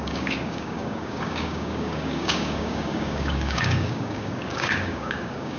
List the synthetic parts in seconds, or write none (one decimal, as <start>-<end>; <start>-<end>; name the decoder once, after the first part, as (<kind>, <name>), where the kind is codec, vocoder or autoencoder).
0.0-5.6 (codec, DAC)